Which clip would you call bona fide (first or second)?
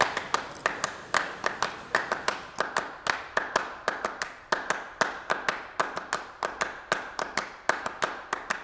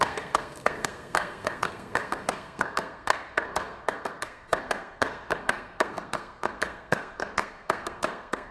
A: first